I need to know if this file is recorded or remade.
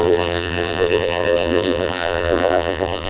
remade